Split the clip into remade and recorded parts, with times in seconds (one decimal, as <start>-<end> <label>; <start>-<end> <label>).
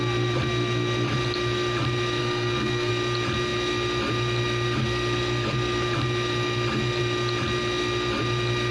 0.0-2.2 recorded; 2.2-2.9 remade; 2.9-8.7 recorded